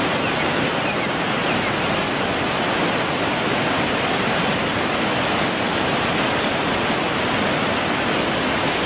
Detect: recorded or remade recorded